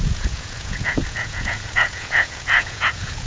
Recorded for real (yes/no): no